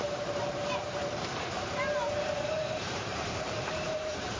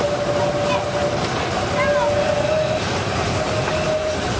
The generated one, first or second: first